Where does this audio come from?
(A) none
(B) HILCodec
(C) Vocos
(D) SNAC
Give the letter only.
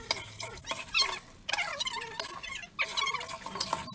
A